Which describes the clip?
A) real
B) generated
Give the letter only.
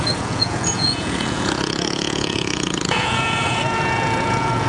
B